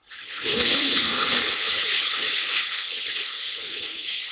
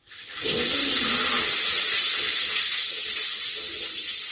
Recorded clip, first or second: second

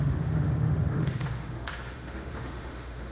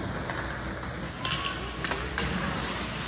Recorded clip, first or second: second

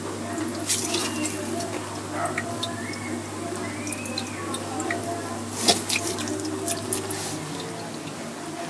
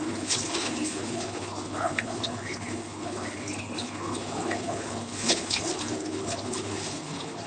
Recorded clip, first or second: first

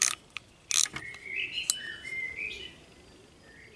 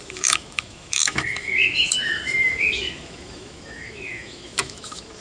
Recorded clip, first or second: first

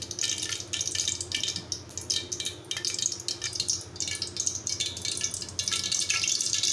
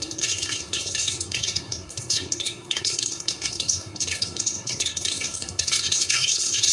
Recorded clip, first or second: first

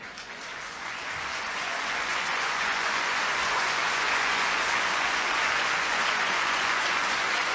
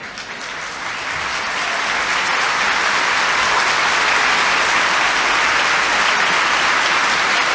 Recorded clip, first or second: second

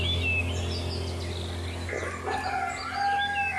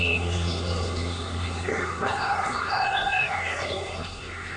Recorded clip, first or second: first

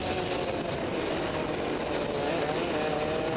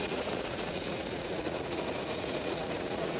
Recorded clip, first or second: first